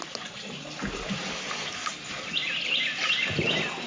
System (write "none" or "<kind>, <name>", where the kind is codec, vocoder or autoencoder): none